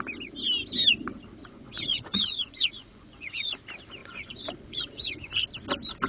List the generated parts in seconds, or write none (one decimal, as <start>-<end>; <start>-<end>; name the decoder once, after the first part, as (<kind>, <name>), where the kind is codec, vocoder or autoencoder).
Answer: 1.4-3.6 (vocoder, Vocos); 4.0-5.4